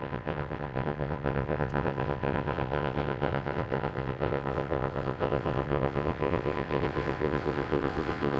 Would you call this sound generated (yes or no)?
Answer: yes